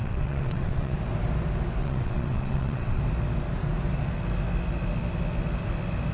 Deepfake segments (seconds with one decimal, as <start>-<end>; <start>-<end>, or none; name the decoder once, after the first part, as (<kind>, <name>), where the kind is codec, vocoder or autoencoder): 0.0-1.0 (vocoder, WaveNeXt); 1.8-3.0